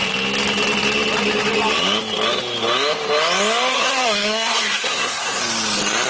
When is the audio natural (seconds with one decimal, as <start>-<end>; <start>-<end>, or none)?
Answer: 0.0-3.7; 5.4-6.1